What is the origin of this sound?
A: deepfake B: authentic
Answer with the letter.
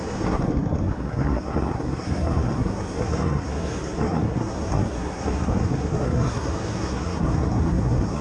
A